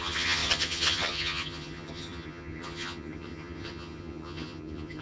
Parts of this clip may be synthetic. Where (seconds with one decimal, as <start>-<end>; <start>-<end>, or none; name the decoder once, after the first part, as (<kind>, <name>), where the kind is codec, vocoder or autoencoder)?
0.0-5.0 (vocoder, HiFi-GAN)